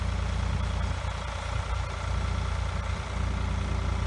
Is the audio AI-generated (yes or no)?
no